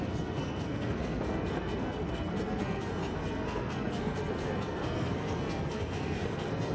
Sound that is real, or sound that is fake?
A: fake